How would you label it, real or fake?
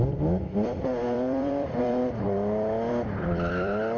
fake